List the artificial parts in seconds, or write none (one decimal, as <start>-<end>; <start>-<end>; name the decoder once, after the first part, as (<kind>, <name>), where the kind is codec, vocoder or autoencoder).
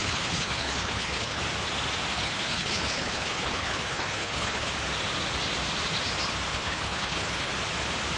0.0-1.4 (codec, HILCodec); 2.1-4.7; 6.5-7.5